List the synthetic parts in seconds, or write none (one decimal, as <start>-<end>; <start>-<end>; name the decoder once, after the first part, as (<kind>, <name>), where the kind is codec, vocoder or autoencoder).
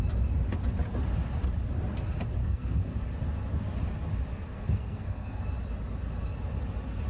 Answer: 2.4-3.0 (codec, SNAC); 4.3-5.4